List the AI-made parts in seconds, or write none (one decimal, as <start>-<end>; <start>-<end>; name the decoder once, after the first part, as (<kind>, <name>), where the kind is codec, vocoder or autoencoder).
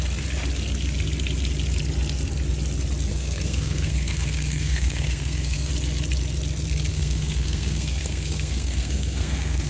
3.1-5.7 (codec, SNAC); 6.9-9.7